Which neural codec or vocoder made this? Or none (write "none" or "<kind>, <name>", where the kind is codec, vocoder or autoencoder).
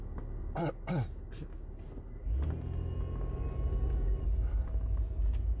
none